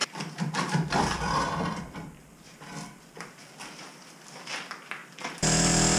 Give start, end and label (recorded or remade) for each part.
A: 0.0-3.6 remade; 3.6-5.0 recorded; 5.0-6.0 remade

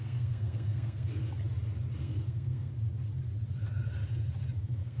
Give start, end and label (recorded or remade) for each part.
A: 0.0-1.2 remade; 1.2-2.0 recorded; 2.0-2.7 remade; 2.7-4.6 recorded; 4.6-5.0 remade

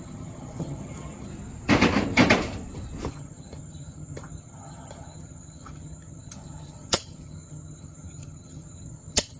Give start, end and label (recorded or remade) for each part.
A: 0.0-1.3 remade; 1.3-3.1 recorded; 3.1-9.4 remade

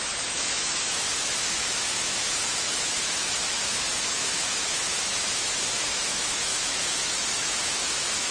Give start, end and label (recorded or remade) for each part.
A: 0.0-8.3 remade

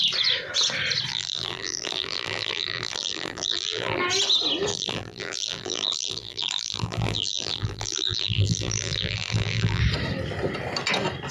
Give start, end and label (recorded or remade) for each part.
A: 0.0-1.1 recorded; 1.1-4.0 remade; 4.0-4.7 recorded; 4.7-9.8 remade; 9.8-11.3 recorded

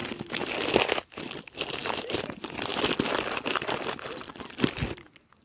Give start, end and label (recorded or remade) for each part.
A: 0.0-5.4 recorded

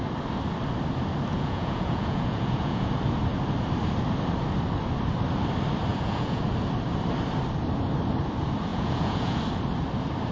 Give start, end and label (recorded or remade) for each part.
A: 0.0-1.3 recorded; 1.3-2.9 remade; 2.9-5.9 recorded; 5.9-6.4 remade; 6.4-8.7 recorded; 8.7-9.4 remade; 9.4-10.3 recorded